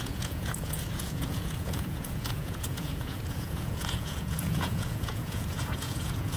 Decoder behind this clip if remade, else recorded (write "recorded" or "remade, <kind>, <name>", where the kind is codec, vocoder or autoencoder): remade, vocoder, Vocos